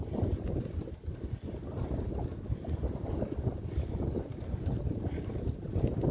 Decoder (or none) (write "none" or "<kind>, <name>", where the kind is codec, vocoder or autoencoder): none